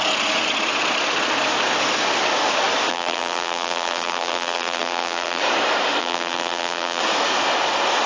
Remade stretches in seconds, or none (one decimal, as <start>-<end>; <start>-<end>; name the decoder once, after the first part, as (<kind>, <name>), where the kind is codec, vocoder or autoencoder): 2.9-5.4 (vocoder, BigVGAN v2); 6.0-7.0